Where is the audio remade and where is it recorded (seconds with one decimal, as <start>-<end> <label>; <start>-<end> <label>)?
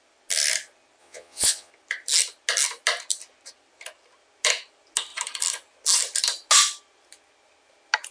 0.0-1.0 recorded; 1.0-1.7 remade; 1.7-8.1 recorded